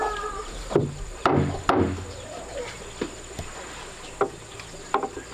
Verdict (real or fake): real